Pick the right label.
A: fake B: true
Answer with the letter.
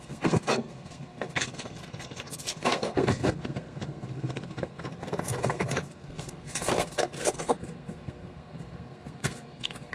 A